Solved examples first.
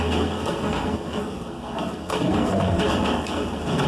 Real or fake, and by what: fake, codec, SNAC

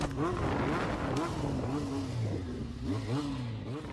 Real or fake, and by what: real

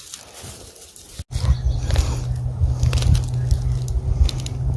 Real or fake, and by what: real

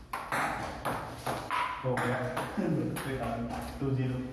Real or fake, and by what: real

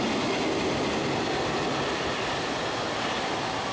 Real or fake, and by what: real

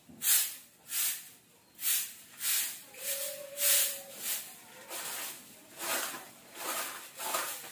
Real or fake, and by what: real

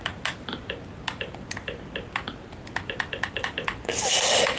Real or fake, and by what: real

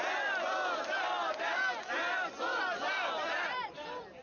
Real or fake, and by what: fake, vocoder, BigVGAN v2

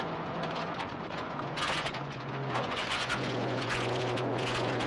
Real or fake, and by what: fake, vocoder, Vocos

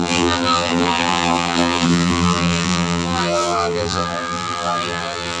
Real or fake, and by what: fake, vocoder, BigVGAN v2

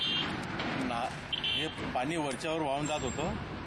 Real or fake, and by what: real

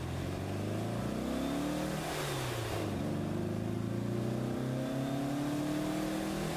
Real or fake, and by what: real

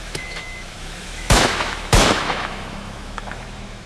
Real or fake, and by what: fake, autoencoder, DAC-VAE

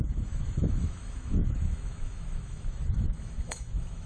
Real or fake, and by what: fake, autoencoder, DAC-VAE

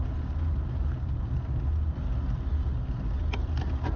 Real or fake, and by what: real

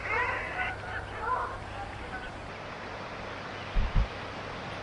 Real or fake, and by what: real